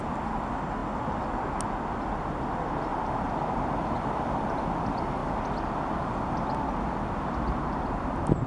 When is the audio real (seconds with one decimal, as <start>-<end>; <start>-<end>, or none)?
0.0-2.9; 4.6-8.5